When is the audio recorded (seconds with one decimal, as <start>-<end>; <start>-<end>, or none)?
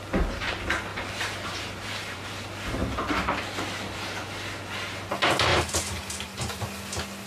0.0-0.9; 2.4-5.5; 6.6-7.3